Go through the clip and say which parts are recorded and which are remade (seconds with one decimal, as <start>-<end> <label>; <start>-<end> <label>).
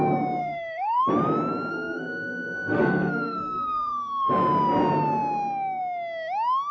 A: 0.0-0.4 recorded; 0.4-1.0 remade; 1.0-1.7 recorded; 1.7-4.3 remade; 4.3-6.7 recorded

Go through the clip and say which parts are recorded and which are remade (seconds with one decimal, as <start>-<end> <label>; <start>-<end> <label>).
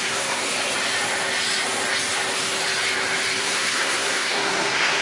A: 0.0-0.4 remade; 0.4-3.4 recorded; 3.4-5.0 remade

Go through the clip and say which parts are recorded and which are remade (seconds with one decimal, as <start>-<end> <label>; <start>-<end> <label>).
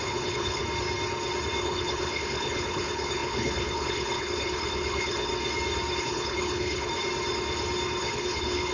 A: 0.0-0.6 remade; 0.6-1.6 recorded; 1.6-5.3 remade; 5.3-6.0 recorded; 6.0-6.9 remade; 6.9-8.0 recorded; 8.0-8.7 remade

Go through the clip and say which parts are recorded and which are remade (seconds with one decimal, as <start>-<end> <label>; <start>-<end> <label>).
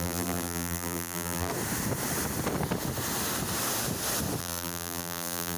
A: 0.0-1.5 remade; 1.5-4.4 recorded; 4.4-5.6 remade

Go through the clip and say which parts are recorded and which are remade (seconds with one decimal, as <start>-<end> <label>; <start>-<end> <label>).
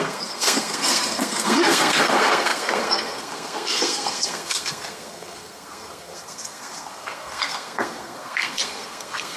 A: 0.0-9.4 remade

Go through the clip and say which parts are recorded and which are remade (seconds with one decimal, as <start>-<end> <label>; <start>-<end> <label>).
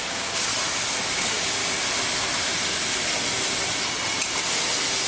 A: 0.0-0.5 remade; 0.5-1.1 recorded; 1.1-1.6 remade; 1.6-5.1 recorded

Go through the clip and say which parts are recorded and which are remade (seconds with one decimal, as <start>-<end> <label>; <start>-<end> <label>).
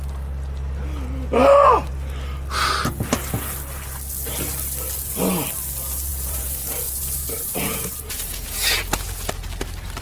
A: 0.0-6.1 recorded; 6.1-9.3 remade; 9.3-10.0 recorded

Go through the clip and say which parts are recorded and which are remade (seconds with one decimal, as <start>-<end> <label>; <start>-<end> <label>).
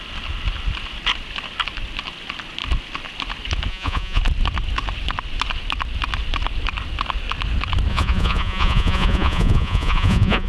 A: 0.0-3.7 recorded; 3.7-4.2 remade; 4.2-7.9 recorded; 7.9-10.5 remade